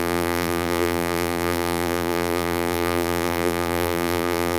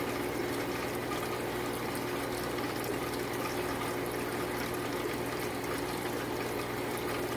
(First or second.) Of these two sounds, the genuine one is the second